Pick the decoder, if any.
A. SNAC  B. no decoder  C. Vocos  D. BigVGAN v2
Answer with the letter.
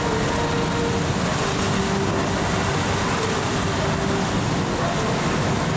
B